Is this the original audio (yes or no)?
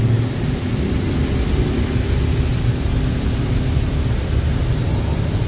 yes